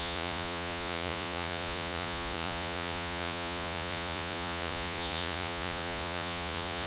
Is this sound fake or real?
fake